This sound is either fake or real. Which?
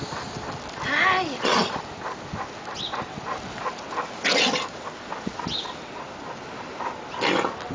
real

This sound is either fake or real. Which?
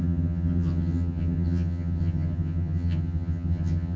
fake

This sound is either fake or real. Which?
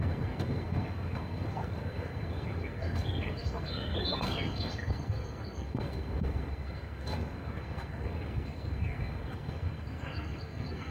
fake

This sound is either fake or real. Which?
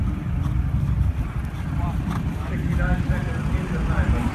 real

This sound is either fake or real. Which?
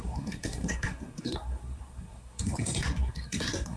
fake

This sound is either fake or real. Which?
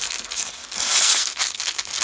fake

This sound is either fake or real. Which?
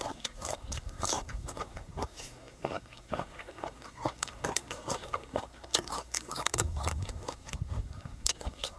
fake